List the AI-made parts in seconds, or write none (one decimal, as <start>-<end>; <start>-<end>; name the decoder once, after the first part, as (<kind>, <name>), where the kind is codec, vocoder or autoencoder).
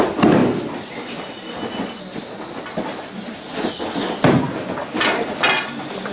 none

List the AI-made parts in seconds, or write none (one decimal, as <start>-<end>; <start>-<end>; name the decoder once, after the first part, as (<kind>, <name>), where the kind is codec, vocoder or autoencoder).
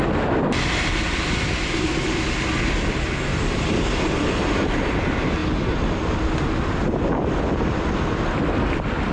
3.3-4.9 (vocoder, BigVGAN v2)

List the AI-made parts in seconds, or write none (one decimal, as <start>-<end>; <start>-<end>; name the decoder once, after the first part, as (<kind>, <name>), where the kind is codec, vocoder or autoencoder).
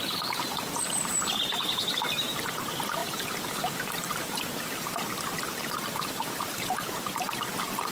0.0-7.9 (vocoder, BigVGAN v2)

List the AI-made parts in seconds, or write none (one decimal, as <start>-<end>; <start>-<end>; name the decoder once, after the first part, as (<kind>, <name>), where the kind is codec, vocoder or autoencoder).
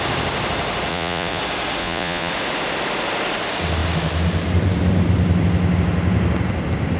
0.9-1.4 (vocoder, Vocos); 1.8-2.3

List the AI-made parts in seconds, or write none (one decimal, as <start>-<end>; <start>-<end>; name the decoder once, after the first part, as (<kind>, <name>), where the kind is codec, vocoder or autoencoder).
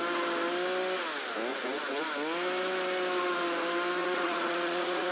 1.5-2.0 (vocoder, Vocos); 4.0-5.1